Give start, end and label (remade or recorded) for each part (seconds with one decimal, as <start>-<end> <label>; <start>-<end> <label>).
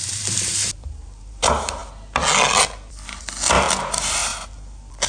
0.0-1.4 remade; 1.4-5.1 recorded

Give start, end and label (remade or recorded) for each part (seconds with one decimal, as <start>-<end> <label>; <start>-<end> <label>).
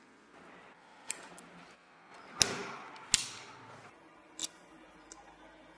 0.0-5.8 recorded